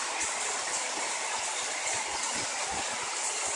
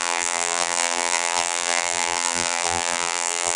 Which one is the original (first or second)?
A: first